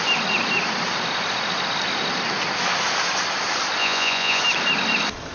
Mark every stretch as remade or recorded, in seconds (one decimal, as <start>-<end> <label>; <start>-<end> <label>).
0.0-3.8 recorded; 3.8-4.4 remade; 4.4-5.3 recorded